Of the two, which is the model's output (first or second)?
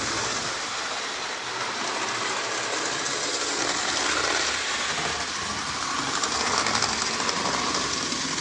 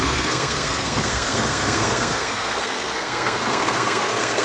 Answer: second